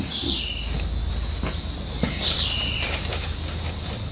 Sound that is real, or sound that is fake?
real